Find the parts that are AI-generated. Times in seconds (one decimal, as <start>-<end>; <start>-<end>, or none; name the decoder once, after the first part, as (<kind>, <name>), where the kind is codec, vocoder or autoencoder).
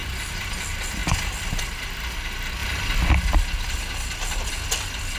none